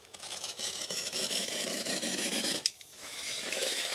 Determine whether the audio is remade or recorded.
remade